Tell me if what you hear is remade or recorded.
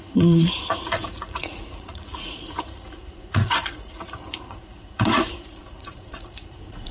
remade